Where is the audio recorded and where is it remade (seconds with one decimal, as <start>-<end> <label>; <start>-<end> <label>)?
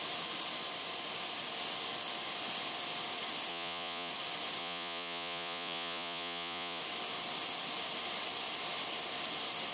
0.0-3.5 recorded; 3.5-4.1 remade; 4.1-4.6 recorded; 4.6-6.8 remade; 6.8-9.7 recorded